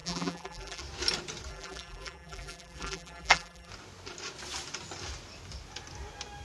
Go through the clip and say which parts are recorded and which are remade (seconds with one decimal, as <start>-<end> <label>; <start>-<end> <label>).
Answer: 0.0-0.8 remade; 0.8-1.5 recorded; 1.5-3.7 remade; 3.7-6.4 recorded